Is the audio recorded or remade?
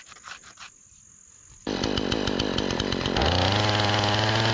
recorded